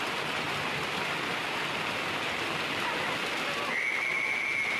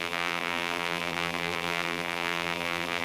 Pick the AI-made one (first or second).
second